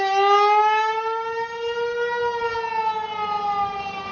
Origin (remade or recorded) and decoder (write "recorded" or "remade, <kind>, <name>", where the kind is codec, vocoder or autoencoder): recorded